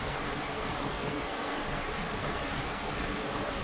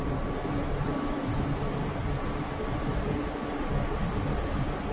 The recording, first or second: second